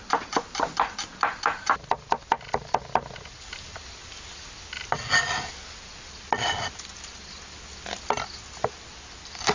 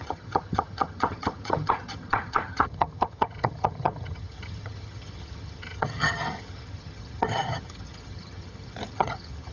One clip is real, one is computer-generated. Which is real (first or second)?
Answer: first